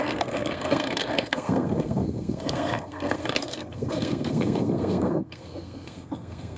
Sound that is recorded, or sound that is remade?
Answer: remade